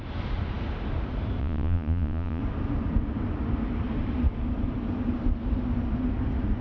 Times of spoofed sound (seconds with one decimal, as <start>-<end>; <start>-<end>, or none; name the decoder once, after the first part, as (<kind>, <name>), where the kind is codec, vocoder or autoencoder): 1.4-2.4 (vocoder, Vocos)